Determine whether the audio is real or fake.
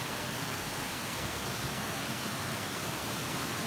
fake